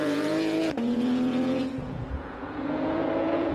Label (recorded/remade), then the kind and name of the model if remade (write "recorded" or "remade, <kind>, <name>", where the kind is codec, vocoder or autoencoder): remade, vocoder, Vocos